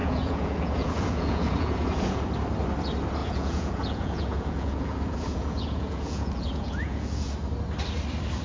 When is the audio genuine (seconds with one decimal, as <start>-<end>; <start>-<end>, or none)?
2.2-3.2; 7.3-8.4